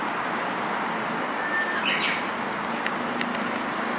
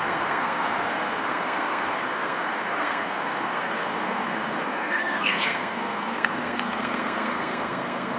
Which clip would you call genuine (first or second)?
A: first